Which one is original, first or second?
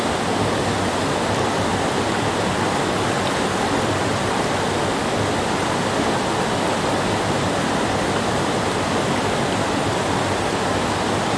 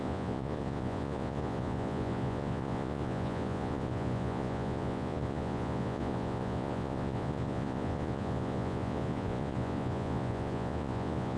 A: first